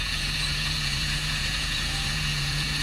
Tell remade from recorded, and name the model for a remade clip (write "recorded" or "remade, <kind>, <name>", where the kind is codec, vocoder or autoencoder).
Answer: remade, vocoder, Vocos